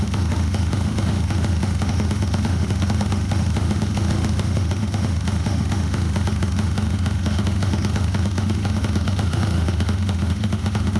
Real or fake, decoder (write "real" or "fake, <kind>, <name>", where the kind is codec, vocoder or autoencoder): fake, autoencoder, DAC-VAE